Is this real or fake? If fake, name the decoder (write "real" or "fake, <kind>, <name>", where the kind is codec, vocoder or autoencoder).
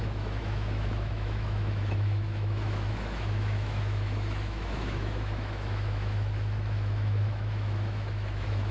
fake, autoencoder, DAC-VAE